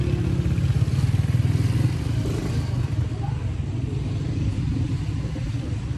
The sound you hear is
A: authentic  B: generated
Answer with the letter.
A